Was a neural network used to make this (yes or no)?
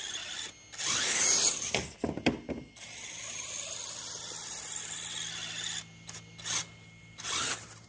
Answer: no